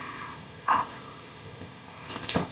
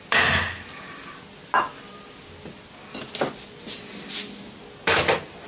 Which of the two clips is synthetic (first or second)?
first